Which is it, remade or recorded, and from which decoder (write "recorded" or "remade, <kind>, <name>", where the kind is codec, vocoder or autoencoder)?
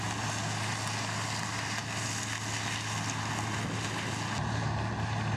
recorded